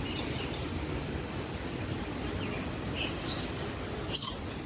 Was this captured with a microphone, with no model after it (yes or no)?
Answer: no